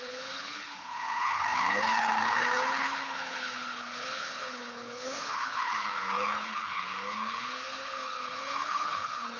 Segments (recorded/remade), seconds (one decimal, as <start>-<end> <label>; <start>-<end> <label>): 0.0-9.4 remade